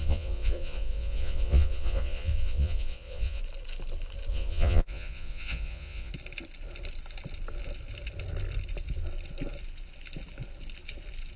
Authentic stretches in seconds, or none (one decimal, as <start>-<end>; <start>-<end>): 3.4-4.3; 6.1-11.4